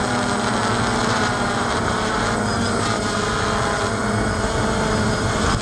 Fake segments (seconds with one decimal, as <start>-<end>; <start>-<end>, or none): 1.0-3.3